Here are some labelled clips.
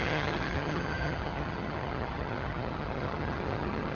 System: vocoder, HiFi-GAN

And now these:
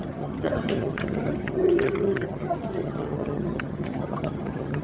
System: vocoder, HiFi-GAN